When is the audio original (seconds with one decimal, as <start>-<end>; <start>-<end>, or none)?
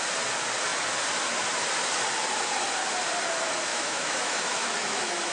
0.0-3.7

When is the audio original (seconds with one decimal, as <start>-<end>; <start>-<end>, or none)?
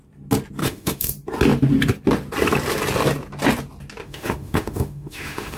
0.0-0.6; 1.1-4.0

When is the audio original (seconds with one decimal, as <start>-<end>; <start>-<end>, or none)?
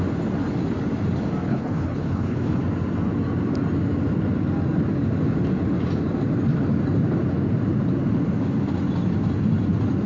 0.0-1.5; 2.6-10.1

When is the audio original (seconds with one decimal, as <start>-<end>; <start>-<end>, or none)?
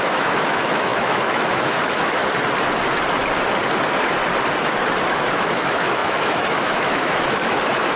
2.2-5.3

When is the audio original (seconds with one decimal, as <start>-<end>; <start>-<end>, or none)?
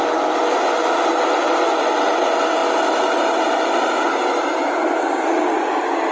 0.0-6.1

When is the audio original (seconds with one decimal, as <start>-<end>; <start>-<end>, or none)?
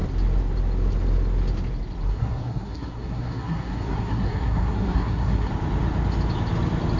0.0-2.1; 5.5-7.0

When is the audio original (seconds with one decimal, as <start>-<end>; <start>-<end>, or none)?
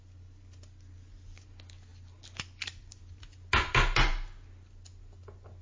0.0-5.6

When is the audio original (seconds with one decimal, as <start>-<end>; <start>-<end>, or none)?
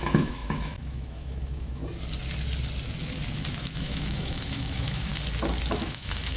1.8-3.5; 5.1-5.7